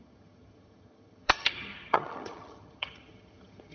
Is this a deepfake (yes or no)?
yes